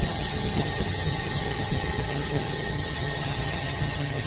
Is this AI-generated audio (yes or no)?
yes